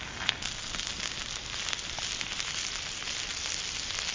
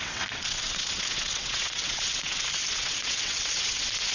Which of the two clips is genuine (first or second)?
first